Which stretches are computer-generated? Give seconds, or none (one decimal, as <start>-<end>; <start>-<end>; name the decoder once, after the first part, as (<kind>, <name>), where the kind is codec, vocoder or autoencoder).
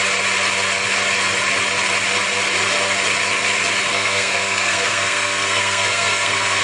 3.9-6.6 (codec, SNAC)